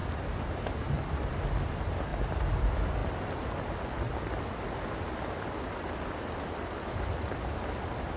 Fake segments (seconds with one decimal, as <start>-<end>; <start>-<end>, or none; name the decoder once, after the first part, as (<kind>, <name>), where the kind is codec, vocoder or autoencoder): none